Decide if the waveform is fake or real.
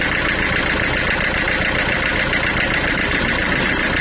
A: real